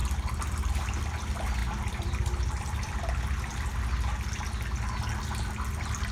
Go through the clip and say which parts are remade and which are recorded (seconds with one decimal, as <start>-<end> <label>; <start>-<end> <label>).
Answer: 0.0-0.7 remade; 0.7-1.6 recorded; 1.6-3.1 remade; 3.1-6.1 recorded